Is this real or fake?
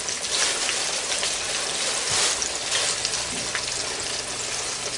real